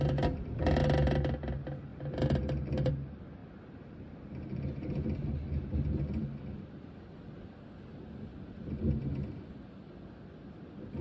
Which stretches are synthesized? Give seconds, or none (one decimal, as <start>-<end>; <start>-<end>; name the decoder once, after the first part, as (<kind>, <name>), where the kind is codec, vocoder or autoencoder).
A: none